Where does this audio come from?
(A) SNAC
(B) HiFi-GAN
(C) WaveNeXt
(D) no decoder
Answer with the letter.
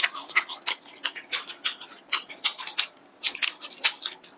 D